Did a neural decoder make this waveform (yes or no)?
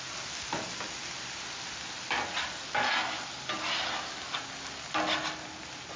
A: no